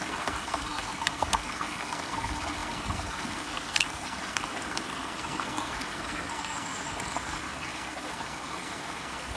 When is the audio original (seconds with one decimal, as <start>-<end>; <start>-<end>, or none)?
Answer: none